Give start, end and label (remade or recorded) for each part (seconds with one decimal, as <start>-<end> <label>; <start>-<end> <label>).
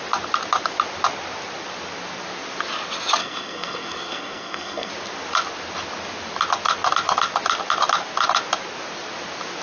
0.0-3.2 recorded; 3.2-4.9 remade; 4.9-9.6 recorded